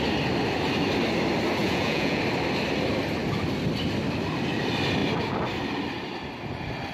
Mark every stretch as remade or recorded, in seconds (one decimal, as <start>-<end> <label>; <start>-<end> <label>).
0.0-1.6 recorded; 1.6-2.2 remade; 2.2-6.9 recorded